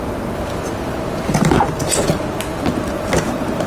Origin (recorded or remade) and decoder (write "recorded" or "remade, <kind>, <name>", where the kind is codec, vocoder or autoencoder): recorded